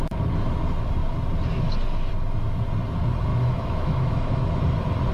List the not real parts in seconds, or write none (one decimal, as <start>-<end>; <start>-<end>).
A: 3.3-4.6